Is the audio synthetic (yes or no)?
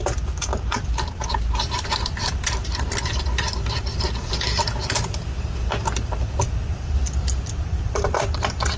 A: yes